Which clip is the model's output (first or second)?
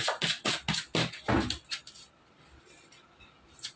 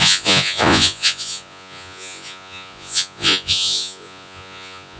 second